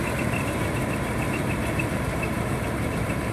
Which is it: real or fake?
fake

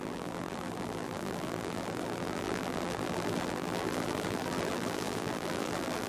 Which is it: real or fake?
fake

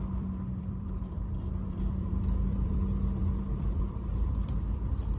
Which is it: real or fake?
fake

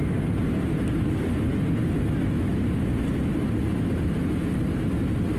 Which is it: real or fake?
real